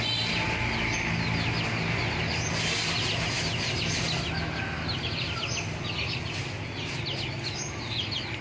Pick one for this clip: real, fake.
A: real